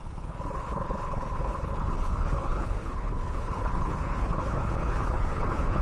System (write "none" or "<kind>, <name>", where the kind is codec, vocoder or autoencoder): codec, HILCodec